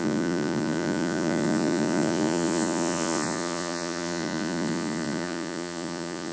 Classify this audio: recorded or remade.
remade